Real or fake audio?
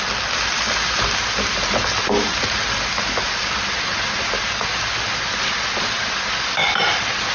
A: real